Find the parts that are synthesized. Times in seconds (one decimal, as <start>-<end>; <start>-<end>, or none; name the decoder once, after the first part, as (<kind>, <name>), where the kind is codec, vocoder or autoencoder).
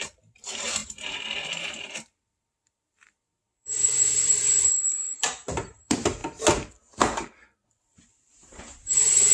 0.0-6.2 (vocoder, BigVGAN v2); 7.7-9.3